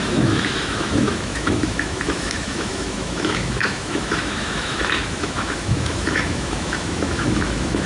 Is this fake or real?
fake